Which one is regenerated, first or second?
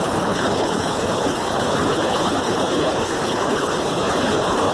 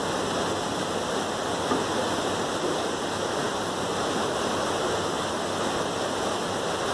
first